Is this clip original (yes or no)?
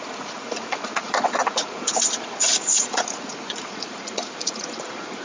no